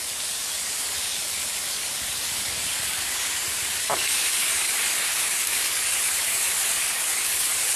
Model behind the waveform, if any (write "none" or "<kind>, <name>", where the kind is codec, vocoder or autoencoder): codec, DAC